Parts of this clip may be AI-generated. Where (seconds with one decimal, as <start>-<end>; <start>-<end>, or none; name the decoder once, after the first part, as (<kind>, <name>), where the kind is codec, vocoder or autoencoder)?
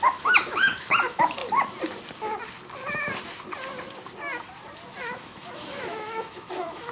0.0-1.4 (autoencoder, DAC-VAE); 5.0-6.9